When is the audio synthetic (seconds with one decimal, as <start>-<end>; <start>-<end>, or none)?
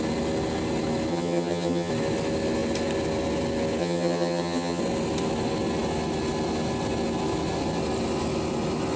1.1-1.9; 3.8-4.8